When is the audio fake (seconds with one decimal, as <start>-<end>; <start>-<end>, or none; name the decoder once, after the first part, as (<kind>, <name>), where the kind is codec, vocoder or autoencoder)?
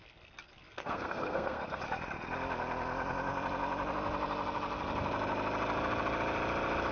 0.8-1.8 (codec, SNAC)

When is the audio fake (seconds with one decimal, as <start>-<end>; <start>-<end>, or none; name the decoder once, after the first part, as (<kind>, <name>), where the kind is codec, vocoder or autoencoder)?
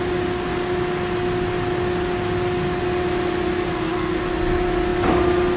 3.7-4.2 (codec, SNAC)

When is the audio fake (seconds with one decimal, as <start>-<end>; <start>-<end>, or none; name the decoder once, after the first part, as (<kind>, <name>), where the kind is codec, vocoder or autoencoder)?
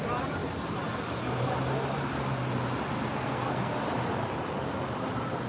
3.1-3.7 (codec, SNAC)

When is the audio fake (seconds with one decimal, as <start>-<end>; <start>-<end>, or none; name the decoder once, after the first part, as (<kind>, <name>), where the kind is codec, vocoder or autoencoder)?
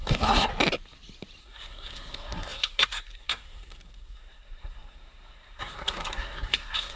0.0-0.5 (codec, SNAC); 1.4-7.0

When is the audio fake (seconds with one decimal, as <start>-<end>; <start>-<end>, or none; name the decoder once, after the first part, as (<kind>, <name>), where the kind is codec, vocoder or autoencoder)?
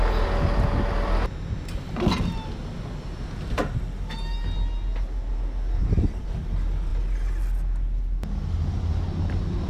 none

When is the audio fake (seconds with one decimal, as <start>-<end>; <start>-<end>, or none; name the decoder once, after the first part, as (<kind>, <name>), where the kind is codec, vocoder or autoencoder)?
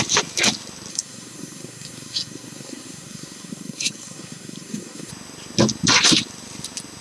0.9-5.1 (codec, SNAC)